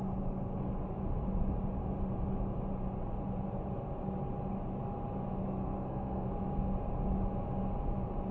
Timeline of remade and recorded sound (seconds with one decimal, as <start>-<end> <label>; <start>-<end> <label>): 0.0-5.4 recorded; 5.4-6.3 remade; 6.3-8.3 recorded